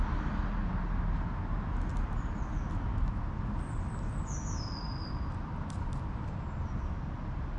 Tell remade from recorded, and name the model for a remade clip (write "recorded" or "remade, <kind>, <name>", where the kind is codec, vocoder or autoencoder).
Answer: recorded